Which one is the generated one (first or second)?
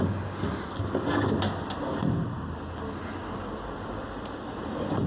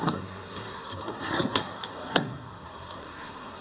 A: second